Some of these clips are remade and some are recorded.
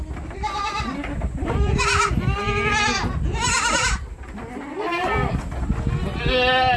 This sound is recorded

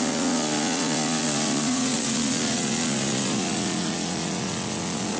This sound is remade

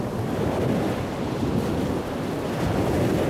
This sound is recorded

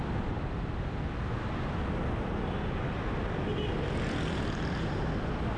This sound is recorded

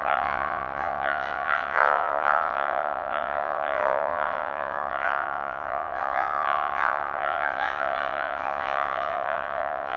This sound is remade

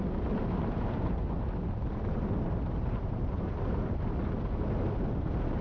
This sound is recorded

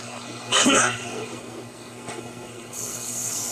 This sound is remade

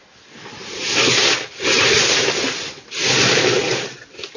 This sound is recorded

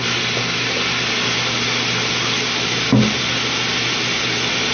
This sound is recorded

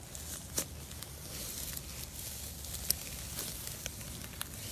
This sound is recorded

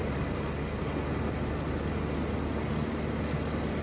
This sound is recorded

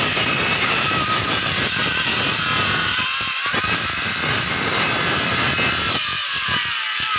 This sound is remade